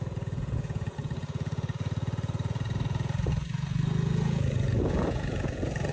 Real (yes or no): no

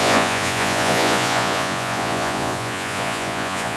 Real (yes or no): no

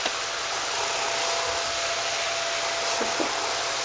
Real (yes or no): yes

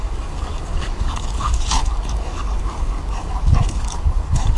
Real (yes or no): no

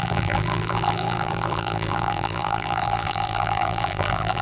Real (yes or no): no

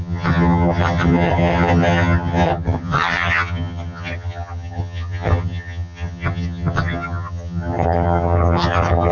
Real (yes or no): no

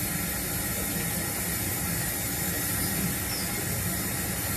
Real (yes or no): yes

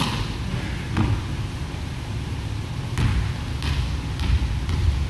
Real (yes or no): yes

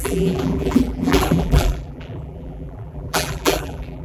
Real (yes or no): no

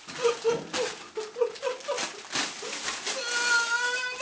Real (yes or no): yes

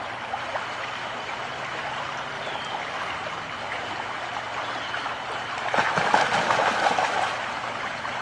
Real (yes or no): yes